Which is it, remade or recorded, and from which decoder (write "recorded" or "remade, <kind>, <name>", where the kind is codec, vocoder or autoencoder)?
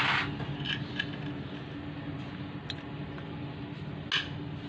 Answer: recorded